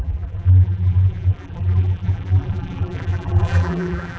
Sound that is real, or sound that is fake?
fake